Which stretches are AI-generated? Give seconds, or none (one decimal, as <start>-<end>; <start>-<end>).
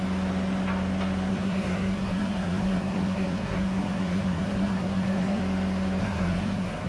1.3-5.4; 6.0-6.9